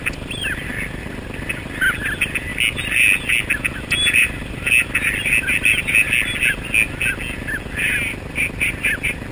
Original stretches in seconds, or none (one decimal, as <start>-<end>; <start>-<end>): 0.0-9.3